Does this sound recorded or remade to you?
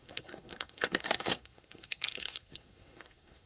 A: remade